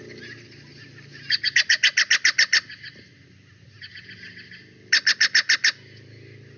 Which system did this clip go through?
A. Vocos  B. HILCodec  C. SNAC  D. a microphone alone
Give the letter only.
D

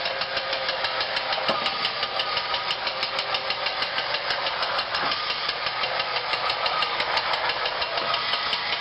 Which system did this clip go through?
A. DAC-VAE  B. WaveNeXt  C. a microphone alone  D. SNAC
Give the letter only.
C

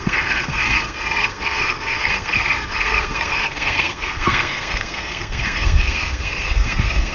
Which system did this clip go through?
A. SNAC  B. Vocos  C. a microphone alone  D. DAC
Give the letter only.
A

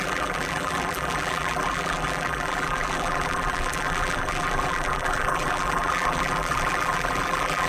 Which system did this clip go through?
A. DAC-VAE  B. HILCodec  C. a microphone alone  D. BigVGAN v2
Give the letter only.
D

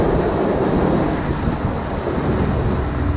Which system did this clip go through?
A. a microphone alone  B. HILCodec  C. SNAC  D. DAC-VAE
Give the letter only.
A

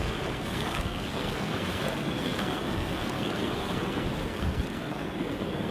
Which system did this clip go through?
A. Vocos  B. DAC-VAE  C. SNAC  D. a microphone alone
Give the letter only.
C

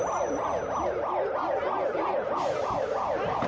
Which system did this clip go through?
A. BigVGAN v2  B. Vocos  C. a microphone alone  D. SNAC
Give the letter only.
C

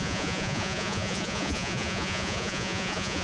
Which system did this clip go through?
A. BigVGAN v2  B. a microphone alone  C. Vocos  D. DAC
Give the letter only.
C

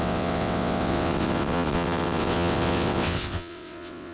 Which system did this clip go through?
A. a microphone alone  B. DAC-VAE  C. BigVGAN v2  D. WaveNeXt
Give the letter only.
D